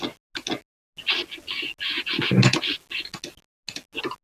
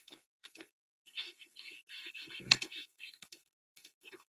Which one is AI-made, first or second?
second